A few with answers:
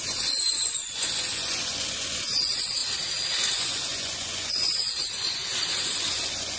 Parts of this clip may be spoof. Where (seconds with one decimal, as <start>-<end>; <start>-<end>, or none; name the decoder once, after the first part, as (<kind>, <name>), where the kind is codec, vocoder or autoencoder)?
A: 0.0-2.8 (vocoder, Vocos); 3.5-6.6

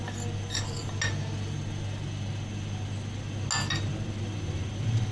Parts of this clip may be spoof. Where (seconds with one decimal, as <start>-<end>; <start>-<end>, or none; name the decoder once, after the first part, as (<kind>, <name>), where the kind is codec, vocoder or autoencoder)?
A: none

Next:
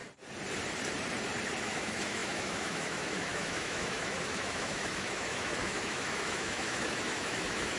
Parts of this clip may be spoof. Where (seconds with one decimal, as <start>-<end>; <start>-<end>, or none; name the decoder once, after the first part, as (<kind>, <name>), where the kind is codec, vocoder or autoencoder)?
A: 1.6-7.8 (autoencoder, DAC-VAE)

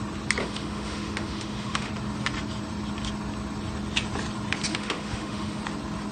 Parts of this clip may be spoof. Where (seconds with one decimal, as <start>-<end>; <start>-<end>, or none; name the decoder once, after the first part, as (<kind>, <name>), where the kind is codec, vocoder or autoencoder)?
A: 0.4-1.9 (autoencoder, DAC-VAE); 4.7-5.6